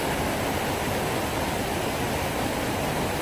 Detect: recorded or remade recorded